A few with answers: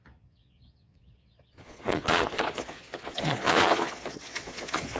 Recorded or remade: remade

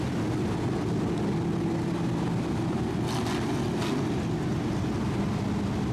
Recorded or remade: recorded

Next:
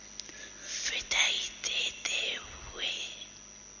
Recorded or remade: recorded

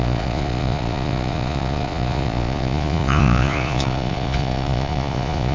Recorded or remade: remade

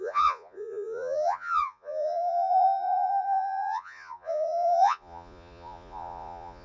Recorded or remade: remade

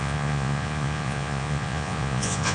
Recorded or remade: remade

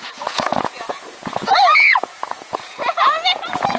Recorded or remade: remade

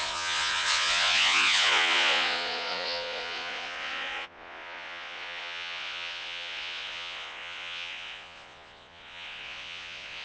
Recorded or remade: remade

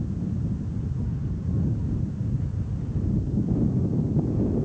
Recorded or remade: recorded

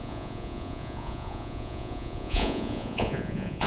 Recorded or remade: remade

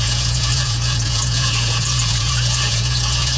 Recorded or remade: remade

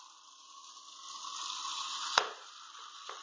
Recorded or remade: recorded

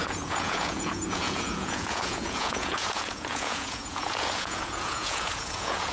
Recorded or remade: remade